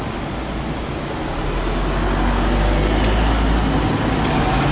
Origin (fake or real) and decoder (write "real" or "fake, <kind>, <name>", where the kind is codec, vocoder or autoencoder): real